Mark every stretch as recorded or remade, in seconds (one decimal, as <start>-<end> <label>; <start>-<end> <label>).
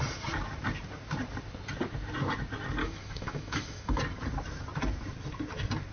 0.0-2.8 recorded; 2.8-4.0 remade; 4.0-5.9 recorded